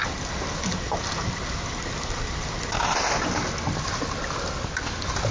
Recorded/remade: recorded